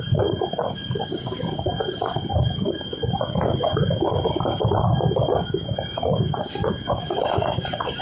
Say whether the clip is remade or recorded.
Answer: remade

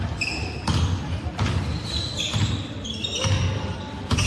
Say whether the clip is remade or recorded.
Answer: recorded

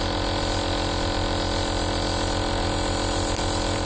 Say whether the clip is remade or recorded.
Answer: recorded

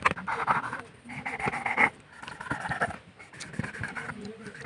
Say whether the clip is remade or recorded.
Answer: recorded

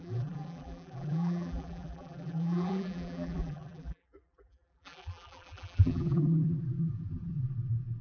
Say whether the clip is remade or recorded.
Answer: remade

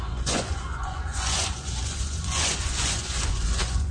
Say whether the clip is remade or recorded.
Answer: remade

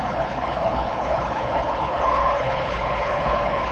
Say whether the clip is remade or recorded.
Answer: remade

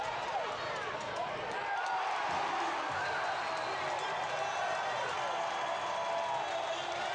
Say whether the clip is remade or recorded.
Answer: recorded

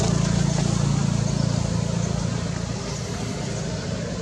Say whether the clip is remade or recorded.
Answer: recorded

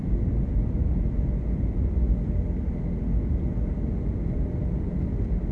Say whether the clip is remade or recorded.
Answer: recorded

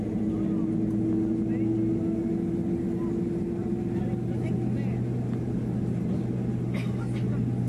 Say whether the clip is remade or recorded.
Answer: recorded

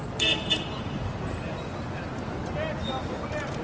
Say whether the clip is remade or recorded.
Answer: recorded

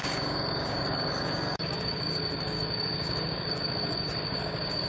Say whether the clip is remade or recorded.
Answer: remade